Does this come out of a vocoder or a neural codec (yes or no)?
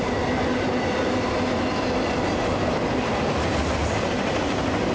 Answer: no